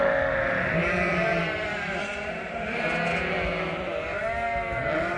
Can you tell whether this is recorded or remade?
recorded